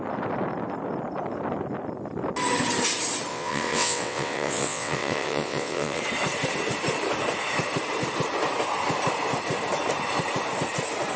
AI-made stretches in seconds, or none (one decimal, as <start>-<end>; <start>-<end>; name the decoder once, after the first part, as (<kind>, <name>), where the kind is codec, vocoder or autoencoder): 3.3-6.0 (vocoder, WaveNeXt)